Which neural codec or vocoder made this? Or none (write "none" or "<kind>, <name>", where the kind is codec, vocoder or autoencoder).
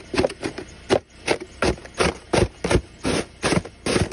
none